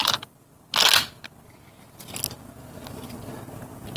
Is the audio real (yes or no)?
yes